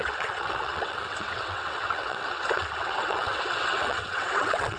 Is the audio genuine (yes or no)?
no